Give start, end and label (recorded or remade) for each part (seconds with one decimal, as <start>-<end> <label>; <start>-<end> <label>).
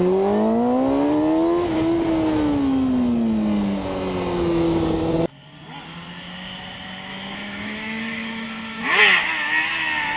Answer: 0.0-7.1 recorded; 7.1-9.0 remade; 9.0-10.2 recorded